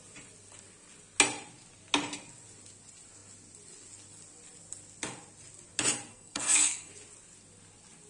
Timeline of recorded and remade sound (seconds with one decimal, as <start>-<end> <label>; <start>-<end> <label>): 0.0-6.1 recorded; 6.1-6.9 remade; 6.9-8.1 recorded